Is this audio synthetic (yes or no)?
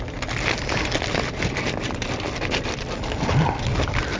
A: no